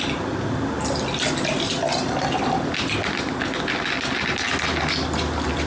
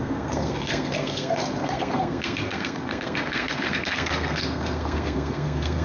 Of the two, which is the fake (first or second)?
second